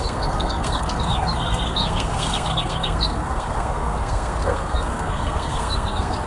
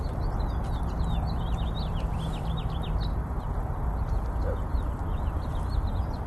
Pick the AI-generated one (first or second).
first